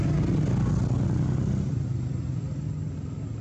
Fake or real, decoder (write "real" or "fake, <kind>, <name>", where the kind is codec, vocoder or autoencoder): real